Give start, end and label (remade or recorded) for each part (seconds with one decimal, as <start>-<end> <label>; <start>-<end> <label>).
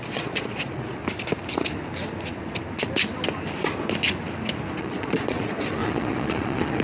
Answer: 0.0-1.0 remade; 1.0-4.8 recorded; 4.8-6.8 remade